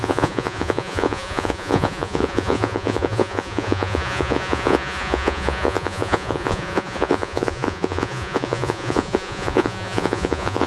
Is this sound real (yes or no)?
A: no